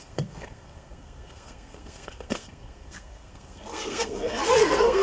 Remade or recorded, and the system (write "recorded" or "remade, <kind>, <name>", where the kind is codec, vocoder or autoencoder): remade, codec, SNAC